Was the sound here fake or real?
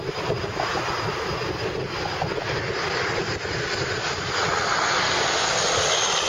real